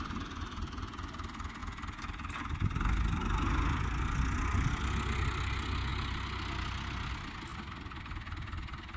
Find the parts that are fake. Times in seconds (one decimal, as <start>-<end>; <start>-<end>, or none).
none